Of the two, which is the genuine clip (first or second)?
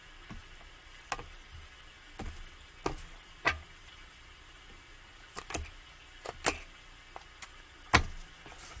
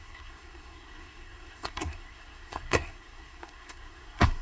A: first